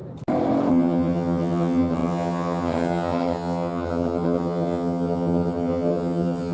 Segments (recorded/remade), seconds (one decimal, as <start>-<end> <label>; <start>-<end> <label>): 0.0-0.7 recorded; 0.7-6.5 remade